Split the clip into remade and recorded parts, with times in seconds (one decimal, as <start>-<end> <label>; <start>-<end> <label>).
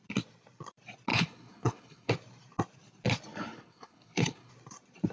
0.0-1.1 recorded; 1.1-2.1 remade; 2.1-3.3 recorded; 3.3-4.5 remade; 4.5-5.1 recorded